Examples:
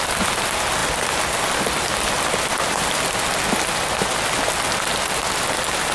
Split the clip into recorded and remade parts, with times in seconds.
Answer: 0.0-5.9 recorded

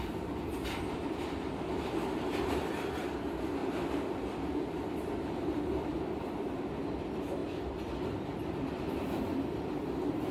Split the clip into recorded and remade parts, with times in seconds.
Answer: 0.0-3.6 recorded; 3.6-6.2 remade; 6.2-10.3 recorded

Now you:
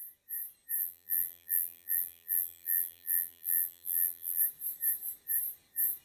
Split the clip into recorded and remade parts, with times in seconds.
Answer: 0.0-0.8 recorded; 0.8-4.4 remade; 4.4-6.0 recorded

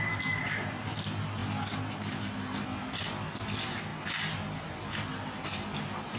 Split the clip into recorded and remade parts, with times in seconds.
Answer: 0.0-6.2 recorded

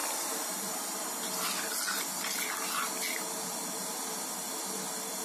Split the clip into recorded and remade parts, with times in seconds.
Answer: 0.0-5.2 recorded

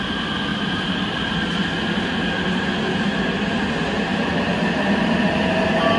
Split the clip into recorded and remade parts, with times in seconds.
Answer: 0.0-0.5 recorded; 0.5-1.4 remade; 1.4-4.1 recorded; 4.1-5.2 remade; 5.2-6.0 recorded

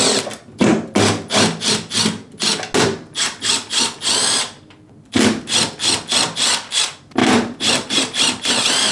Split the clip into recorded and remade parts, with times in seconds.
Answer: 0.0-7.2 recorded; 7.2-8.5 remade; 8.5-8.9 recorded